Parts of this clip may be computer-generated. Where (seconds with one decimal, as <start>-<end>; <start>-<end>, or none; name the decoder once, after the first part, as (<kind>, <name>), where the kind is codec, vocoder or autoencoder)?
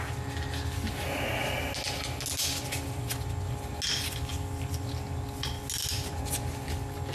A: none